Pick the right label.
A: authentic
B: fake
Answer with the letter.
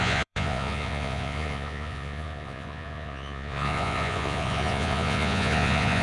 B